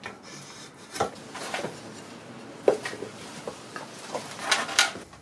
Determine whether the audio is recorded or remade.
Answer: recorded